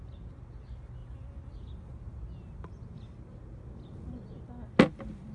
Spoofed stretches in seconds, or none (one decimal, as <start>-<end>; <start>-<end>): 1.0-1.9